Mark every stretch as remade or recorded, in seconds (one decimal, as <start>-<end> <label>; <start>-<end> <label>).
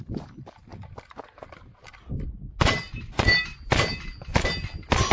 0.0-5.1 recorded